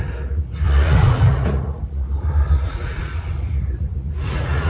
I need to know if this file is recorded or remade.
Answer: remade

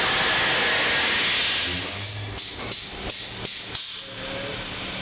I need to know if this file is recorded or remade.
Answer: recorded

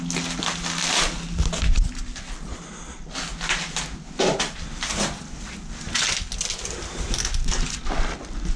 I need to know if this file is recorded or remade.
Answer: recorded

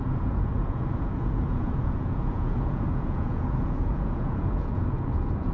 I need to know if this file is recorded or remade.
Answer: remade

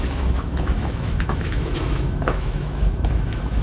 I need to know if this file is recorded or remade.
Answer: remade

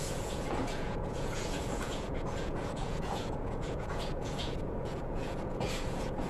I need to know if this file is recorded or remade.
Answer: remade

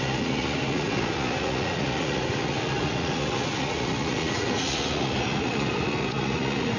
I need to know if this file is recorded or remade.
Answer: remade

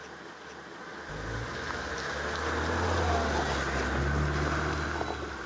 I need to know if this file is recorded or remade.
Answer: recorded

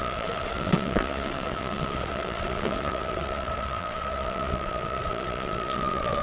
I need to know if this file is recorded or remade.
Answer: remade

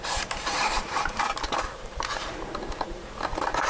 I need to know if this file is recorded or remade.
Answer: remade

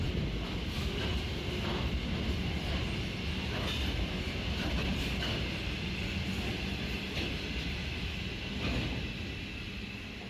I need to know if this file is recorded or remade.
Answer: recorded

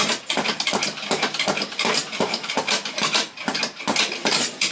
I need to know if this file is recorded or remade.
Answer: recorded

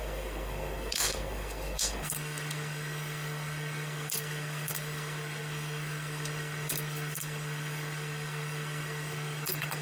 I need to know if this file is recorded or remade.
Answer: remade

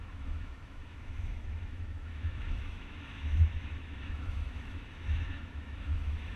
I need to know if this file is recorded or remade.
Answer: remade